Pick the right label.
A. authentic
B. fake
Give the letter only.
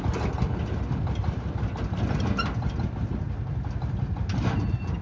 A